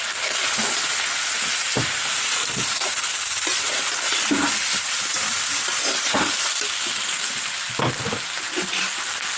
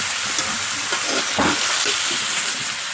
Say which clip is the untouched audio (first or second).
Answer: first